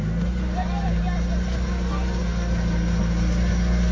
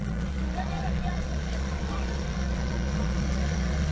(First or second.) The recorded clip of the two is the first